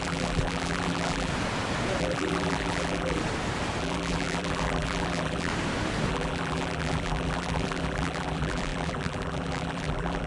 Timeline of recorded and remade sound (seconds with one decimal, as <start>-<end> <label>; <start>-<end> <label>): 0.0-1.3 remade; 1.3-2.0 recorded; 2.0-3.2 remade; 3.2-3.8 recorded; 3.8-5.5 remade; 5.5-6.1 recorded; 6.1-10.3 remade